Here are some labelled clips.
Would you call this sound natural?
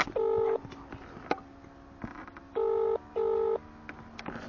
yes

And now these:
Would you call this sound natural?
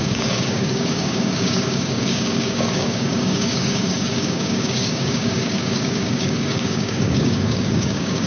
no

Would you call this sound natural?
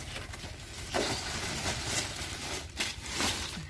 yes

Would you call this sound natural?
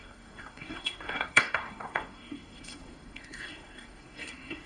no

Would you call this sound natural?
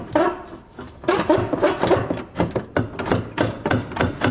yes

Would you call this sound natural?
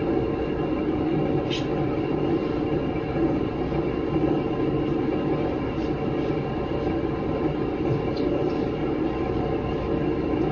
yes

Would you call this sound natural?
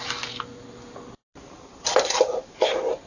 yes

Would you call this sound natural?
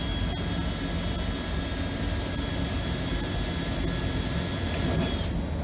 yes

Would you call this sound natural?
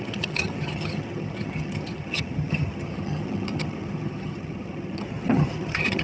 no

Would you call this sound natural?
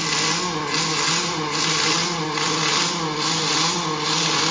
yes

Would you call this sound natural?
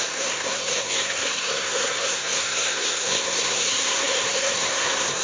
no